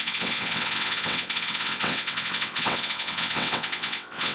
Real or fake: fake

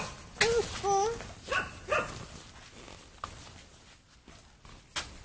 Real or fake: real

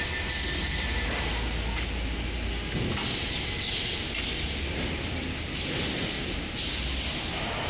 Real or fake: real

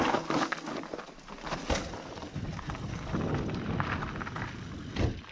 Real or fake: real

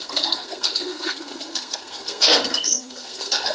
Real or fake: fake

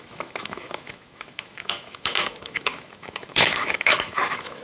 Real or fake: fake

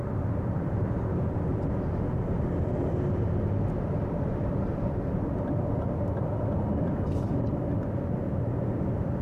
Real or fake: fake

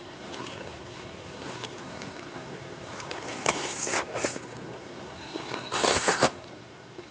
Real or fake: fake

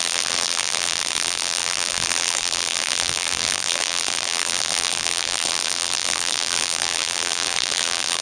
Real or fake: fake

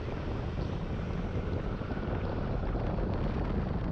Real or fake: real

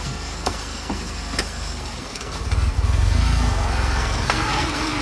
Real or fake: fake